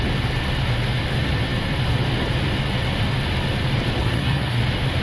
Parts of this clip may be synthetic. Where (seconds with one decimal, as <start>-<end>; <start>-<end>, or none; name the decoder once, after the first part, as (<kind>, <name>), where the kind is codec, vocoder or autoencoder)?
4.0-4.6 (codec, SNAC)